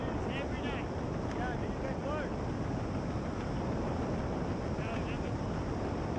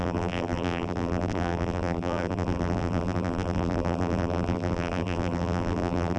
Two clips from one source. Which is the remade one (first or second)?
second